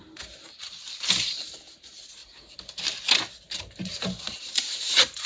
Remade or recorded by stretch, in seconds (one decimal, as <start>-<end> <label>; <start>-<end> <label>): 0.0-5.3 recorded